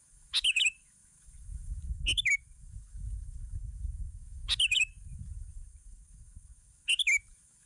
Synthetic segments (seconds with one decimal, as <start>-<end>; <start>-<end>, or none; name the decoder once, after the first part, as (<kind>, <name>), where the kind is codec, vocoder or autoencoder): 0.0-7.7 (autoencoder, DAC-VAE)